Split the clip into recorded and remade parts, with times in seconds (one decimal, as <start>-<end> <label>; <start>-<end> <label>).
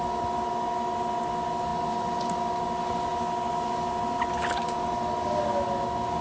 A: 0.0-6.2 recorded